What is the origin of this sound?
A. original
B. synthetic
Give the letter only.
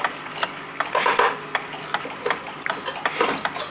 A